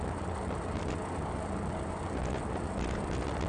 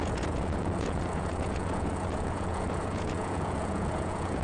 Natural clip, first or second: first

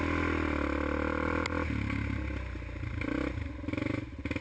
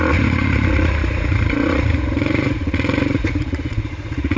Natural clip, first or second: first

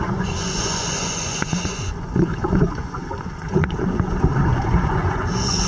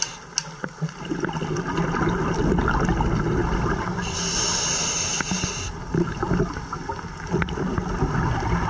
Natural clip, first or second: second